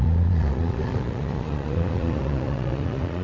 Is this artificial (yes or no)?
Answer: yes